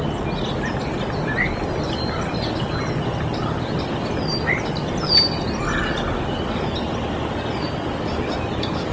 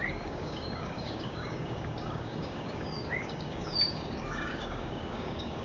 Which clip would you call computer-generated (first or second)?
second